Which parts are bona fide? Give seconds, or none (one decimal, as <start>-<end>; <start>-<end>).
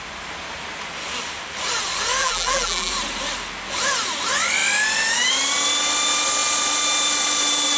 0.0-2.2; 2.9-7.8